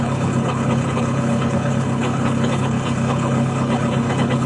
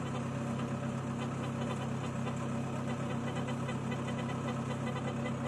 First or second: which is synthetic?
first